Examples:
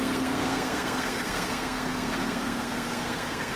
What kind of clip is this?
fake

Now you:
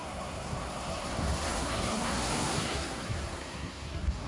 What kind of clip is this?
fake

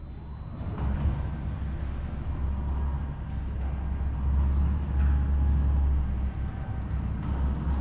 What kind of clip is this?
real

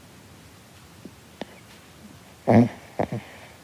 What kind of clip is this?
real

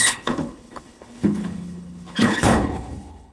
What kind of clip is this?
fake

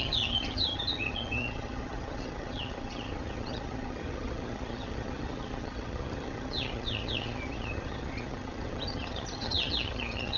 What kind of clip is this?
fake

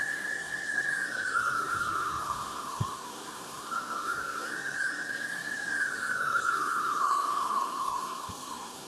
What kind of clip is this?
fake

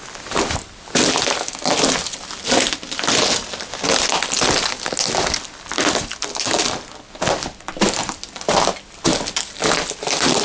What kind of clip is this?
real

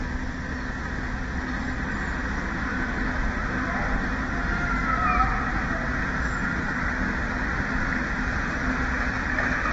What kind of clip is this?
real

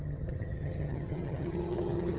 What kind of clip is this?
fake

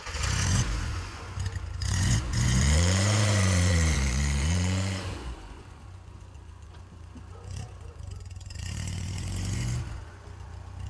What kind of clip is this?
fake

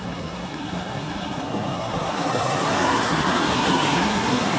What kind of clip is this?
fake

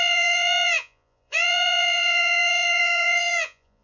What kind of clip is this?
fake